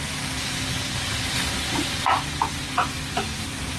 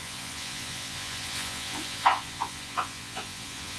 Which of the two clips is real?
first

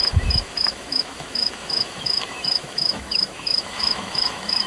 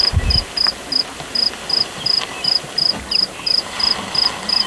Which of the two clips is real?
second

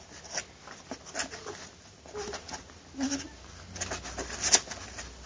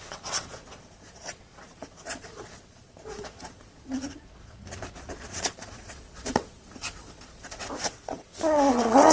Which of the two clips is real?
first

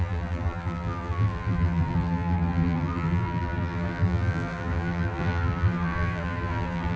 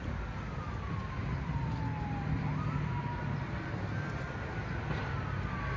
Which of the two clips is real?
second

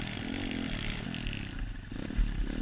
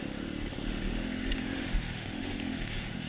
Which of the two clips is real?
first